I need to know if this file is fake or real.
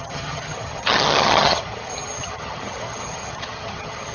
fake